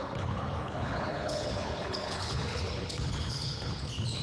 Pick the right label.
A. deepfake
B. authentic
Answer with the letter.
A